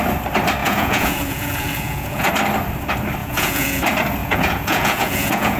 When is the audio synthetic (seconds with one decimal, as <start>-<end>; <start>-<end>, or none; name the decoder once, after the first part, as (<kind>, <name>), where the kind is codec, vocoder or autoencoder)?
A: 0.6-2.3 (vocoder, Vocos); 3.2-3.8; 4.2-5.6